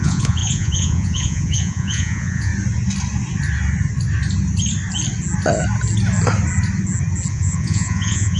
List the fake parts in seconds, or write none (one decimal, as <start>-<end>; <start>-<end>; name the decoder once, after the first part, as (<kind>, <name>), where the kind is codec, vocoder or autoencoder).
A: 0.0-2.5 (vocoder, Vocos); 7.3-8.4

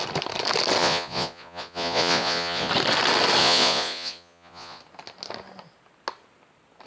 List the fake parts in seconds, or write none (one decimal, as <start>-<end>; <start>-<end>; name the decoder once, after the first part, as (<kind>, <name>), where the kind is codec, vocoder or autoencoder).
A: 0.8-2.7 (vocoder, Vocos); 3.4-4.8

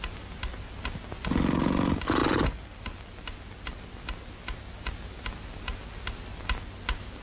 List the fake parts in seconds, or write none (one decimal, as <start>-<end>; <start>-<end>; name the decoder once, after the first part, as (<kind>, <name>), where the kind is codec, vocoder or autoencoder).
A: none

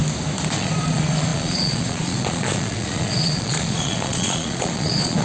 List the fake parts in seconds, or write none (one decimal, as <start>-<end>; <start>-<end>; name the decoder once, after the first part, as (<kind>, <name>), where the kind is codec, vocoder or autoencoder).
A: 0.5-5.2 (vocoder, Vocos)

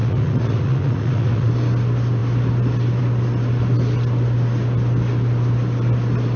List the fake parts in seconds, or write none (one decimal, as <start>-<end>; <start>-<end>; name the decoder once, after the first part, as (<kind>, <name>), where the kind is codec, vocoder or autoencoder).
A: 0.0-1.5 (vocoder, Vocos)

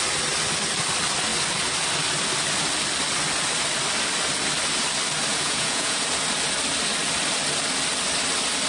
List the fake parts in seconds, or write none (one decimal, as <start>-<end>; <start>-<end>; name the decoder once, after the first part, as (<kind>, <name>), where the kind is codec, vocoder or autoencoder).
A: 5.3-6.0 (vocoder, Vocos)